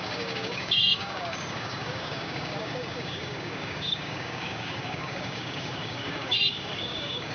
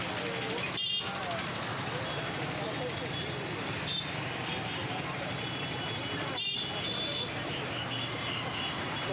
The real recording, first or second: second